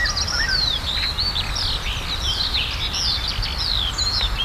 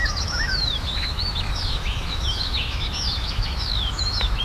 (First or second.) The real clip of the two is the first